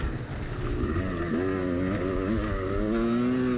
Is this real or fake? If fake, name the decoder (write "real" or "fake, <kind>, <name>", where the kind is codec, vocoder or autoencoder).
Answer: real